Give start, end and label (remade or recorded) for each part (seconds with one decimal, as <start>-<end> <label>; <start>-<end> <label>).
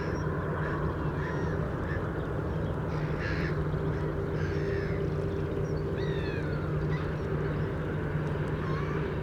0.0-1.1 recorded; 1.1-1.6 remade; 1.6-9.2 recorded